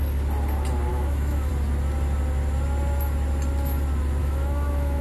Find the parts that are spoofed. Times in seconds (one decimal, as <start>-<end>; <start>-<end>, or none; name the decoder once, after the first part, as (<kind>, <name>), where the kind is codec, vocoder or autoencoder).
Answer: 0.9-1.5 (autoencoder, DAC-VAE); 4.2-5.0